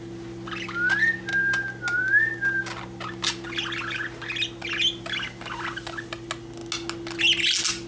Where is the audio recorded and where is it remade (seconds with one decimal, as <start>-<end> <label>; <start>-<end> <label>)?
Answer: 0.0-7.9 recorded